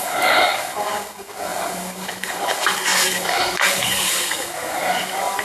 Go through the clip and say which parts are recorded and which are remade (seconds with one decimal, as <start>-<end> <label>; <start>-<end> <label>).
0.0-5.4 remade